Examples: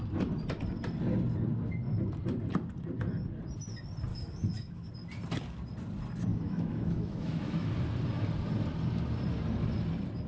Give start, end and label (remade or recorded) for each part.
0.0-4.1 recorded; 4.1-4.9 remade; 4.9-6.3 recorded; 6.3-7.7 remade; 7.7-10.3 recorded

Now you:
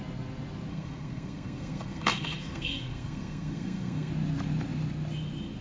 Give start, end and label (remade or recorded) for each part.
0.0-0.7 recorded; 0.7-4.1 remade; 4.1-5.6 recorded

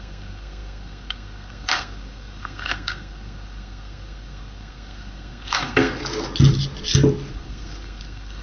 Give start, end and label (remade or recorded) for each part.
0.0-6.0 remade; 6.0-7.3 recorded; 7.3-8.4 remade

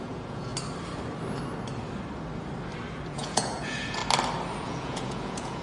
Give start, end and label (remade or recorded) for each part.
0.0-0.5 remade; 0.5-3.1 recorded; 3.1-4.0 remade; 4.0-4.6 recorded; 4.6-5.6 remade

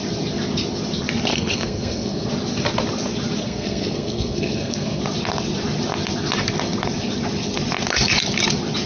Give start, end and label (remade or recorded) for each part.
0.0-1.3 recorded; 1.3-2.3 remade; 2.3-3.4 recorded; 3.4-5.0 remade; 5.0-8.9 recorded

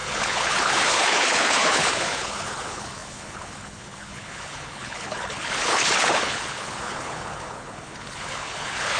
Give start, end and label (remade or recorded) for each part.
0.0-9.0 remade